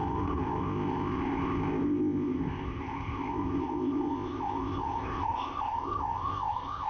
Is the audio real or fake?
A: fake